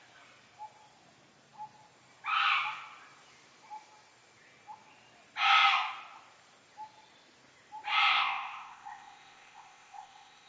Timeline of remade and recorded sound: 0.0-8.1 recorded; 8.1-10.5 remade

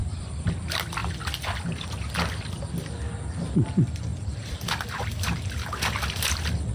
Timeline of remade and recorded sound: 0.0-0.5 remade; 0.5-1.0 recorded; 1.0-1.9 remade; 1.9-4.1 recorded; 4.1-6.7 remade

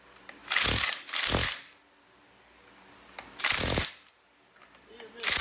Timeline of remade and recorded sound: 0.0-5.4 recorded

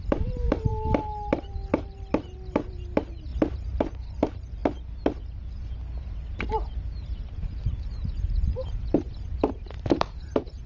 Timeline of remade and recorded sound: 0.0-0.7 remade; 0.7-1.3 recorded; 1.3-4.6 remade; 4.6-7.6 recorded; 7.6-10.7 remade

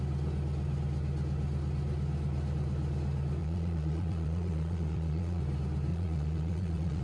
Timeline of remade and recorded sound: 0.0-3.4 recorded; 3.4-5.4 remade; 5.4-5.9 recorded; 5.9-7.0 remade